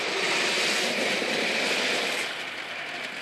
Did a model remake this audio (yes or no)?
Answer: no